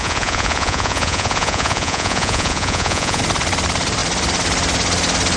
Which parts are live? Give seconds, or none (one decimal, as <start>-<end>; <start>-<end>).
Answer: 3.2-5.4